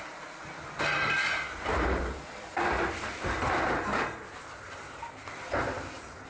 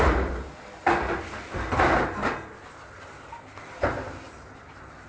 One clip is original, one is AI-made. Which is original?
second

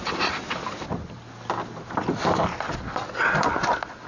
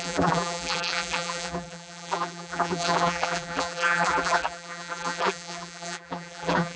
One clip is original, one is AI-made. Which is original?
first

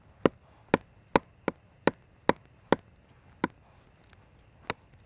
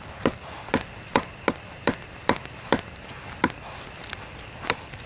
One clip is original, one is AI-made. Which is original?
first